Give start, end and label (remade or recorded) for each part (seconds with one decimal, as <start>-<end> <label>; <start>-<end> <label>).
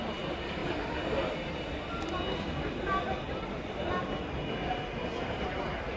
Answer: 0.0-6.0 recorded